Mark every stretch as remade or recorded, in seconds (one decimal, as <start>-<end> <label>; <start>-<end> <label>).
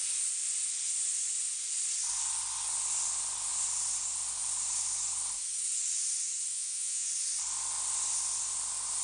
0.0-6.5 recorded; 6.5-7.1 remade; 7.1-9.0 recorded